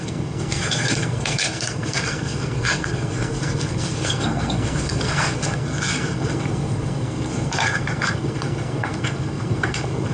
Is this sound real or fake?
fake